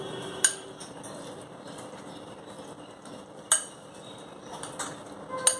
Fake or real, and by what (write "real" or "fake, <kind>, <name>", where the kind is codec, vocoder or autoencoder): real